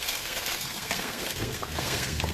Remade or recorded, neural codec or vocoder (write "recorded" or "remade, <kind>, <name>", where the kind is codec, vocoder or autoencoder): remade, codec, SNAC